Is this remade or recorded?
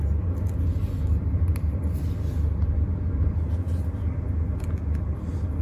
recorded